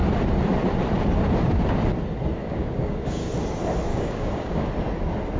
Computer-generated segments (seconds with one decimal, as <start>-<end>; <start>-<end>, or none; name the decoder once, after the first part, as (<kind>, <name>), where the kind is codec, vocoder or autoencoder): 2.4-3.3 (codec, DAC); 3.9-4.7